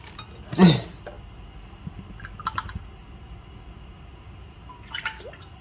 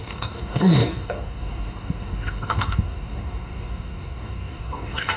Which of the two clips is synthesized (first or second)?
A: second